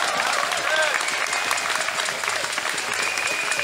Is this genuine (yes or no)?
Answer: yes